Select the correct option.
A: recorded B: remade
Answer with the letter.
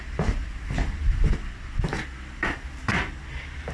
A